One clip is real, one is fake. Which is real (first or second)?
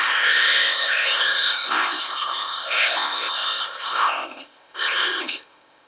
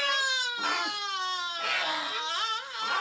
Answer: second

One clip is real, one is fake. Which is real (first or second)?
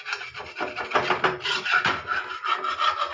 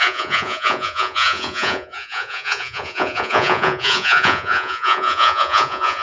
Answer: first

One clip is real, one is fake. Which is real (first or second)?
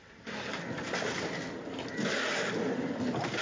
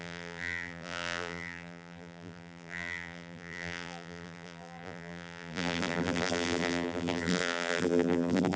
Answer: first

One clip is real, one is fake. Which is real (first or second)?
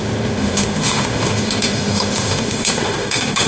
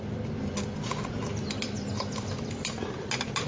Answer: second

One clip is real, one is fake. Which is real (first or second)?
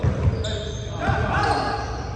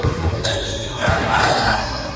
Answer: first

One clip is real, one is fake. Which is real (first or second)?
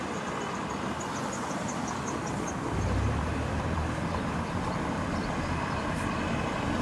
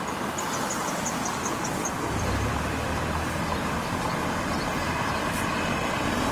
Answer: second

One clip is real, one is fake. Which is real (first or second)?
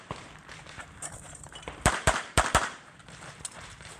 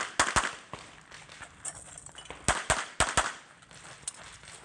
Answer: second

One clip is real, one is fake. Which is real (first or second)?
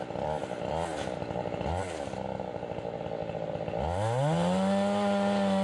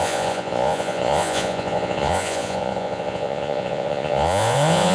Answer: first